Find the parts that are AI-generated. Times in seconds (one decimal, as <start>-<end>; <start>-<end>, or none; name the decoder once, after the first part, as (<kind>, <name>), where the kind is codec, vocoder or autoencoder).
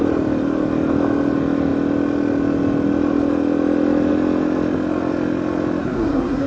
5.8-6.5 (codec, SNAC)